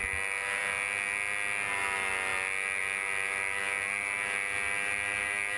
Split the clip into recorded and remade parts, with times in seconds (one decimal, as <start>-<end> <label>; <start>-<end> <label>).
0.0-5.6 recorded